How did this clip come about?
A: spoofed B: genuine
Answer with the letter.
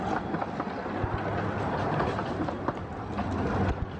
B